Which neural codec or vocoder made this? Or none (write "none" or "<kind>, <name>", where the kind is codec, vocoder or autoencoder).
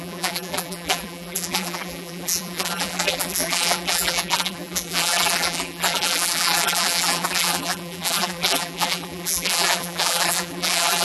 vocoder, BigVGAN v2